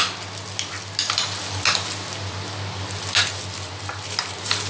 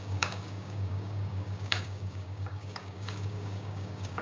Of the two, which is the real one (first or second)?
first